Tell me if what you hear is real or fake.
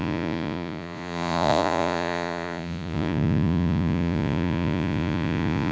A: fake